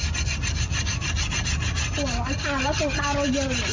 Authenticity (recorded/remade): recorded